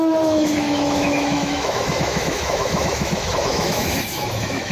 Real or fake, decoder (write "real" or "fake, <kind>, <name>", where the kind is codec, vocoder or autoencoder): fake, autoencoder, DAC-VAE